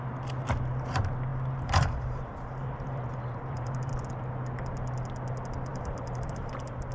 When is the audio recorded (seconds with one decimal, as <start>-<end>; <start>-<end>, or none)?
0.0-1.3; 3.9-5.7; 6.5-6.9